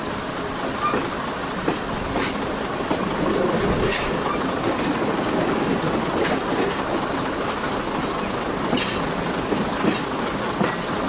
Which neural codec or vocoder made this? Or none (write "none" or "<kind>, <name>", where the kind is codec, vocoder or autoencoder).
none